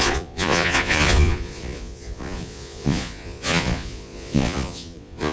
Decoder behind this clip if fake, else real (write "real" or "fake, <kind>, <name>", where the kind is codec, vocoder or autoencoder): fake, vocoder, Vocos